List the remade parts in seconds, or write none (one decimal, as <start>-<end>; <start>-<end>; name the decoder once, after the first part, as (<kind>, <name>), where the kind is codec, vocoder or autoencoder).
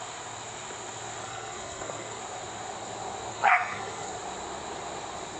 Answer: 1.2-2.2 (codec, SNAC); 3.3-4.1